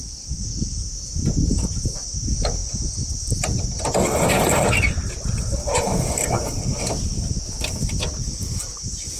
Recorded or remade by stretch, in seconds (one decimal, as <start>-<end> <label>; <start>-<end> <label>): 0.0-9.2 recorded